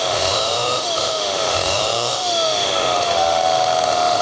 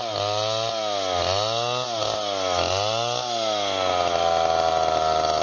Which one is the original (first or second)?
second